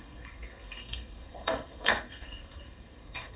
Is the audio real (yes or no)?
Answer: no